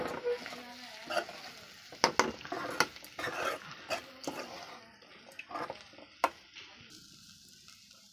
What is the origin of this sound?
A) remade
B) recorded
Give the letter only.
B